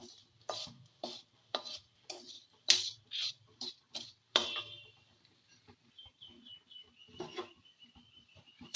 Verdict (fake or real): fake